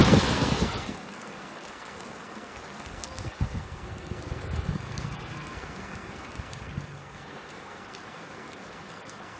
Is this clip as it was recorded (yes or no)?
no